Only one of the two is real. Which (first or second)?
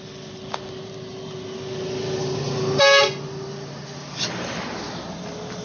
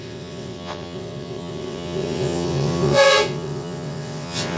first